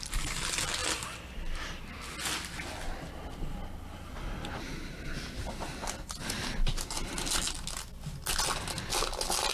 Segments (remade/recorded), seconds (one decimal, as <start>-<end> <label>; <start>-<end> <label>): 0.0-9.5 recorded